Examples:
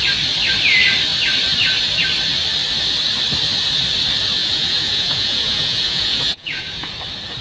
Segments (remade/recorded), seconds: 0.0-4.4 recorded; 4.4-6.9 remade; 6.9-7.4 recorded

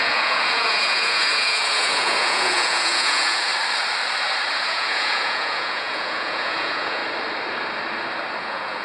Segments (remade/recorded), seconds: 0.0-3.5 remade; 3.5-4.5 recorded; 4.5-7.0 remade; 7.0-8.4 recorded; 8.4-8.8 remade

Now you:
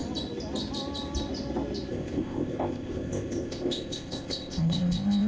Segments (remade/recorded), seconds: 0.0-1.9 recorded; 1.9-5.3 remade